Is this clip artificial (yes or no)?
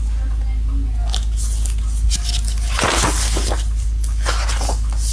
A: no